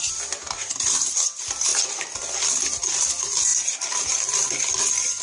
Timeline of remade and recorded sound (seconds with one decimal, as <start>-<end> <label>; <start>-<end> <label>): 0.0-5.2 recorded